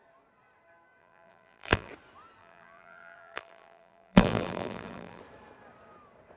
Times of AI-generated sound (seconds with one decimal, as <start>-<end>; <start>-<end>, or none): 1.0-1.9; 2.4-5.2